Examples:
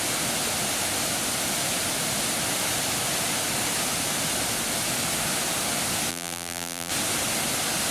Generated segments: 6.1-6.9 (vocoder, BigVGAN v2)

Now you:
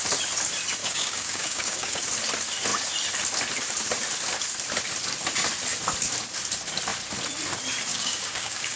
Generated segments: 0.8-2.0 (codec, DAC); 7.9-8.8

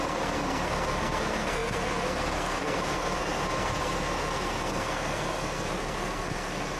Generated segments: 0.0-6.8 (codec, SNAC)

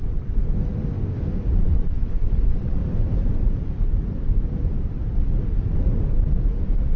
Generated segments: 0.0-0.4 (vocoder, WaveNeXt); 1.6-2.8

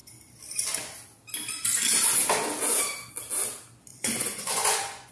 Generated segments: 3.9-5.1 (vocoder, Vocos)